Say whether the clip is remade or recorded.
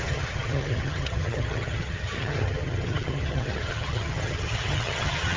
remade